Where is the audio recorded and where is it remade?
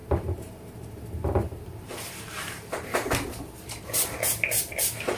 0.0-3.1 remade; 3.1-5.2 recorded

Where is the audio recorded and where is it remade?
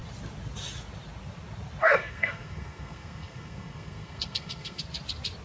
0.0-1.8 recorded; 1.8-4.8 remade; 4.8-5.4 recorded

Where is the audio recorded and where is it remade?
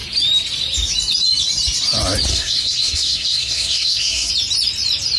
0.0-2.3 recorded; 2.3-4.3 remade; 4.3-5.2 recorded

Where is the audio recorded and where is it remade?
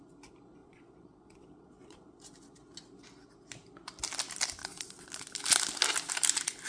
0.0-0.6 recorded; 0.6-2.2 remade; 2.2-4.6 recorded; 4.6-5.1 remade; 5.1-6.7 recorded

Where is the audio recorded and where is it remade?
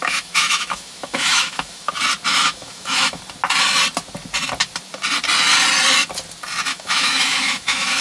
0.0-1.9 remade; 1.9-2.3 recorded; 2.3-3.2 remade; 3.2-6.7 recorded; 6.7-8.0 remade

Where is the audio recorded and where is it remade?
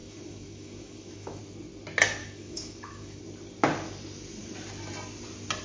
0.0-1.4 remade; 1.4-2.2 recorded; 2.2-3.2 remade; 3.2-5.6 recorded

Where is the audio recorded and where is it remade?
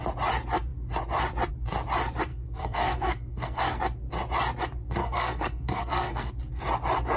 0.0-2.3 recorded; 2.3-3.8 remade; 3.8-5.0 recorded; 5.0-6.3 remade; 6.3-7.2 recorded